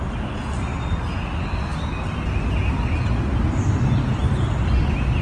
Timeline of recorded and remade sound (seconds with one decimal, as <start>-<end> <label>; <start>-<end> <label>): 0.0-5.2 recorded